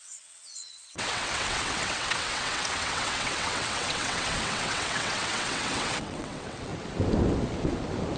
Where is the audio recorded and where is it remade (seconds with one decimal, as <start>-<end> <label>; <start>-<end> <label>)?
0.0-6.7 remade; 6.7-8.2 recorded